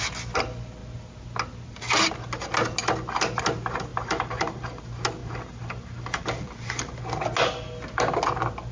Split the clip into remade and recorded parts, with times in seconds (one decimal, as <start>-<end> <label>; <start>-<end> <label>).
0.0-3.9 recorded; 3.9-4.8 remade; 4.8-5.2 recorded; 5.2-7.0 remade; 7.0-8.7 recorded